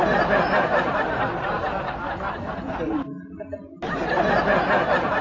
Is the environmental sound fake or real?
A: real